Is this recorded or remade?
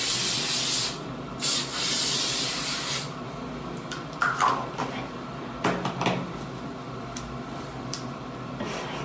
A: remade